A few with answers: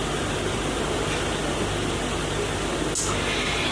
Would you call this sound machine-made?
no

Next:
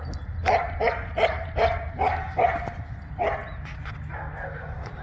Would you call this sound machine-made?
no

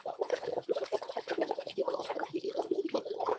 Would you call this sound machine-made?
yes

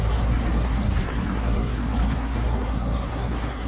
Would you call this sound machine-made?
yes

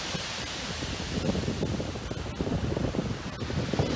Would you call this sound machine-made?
no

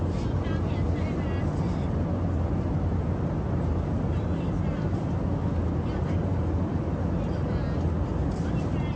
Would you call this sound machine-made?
no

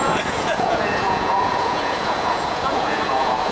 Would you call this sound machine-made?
yes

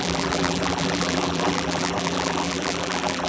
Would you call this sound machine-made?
yes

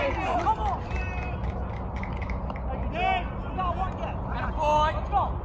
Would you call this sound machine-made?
no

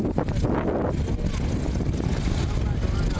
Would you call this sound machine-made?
no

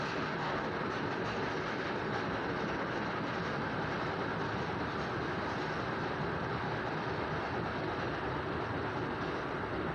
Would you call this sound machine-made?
no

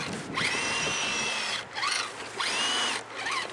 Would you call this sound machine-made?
no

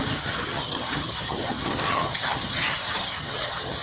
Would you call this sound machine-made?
yes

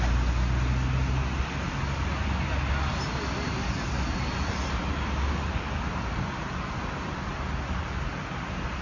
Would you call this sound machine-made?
no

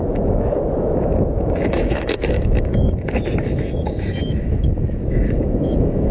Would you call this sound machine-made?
yes